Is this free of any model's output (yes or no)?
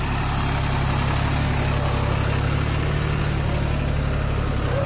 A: yes